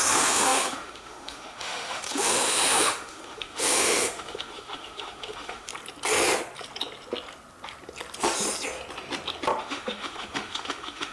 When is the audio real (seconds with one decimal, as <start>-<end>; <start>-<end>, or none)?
5.7-9.6